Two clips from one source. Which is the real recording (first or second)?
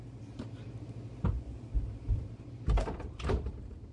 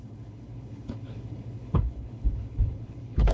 first